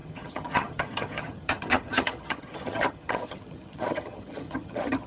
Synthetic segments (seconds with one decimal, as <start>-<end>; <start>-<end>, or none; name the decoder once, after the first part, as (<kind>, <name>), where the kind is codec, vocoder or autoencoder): 0.0-5.1 (vocoder, HiFi-GAN)